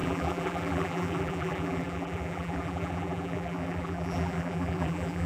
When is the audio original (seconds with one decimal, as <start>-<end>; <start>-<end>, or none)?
none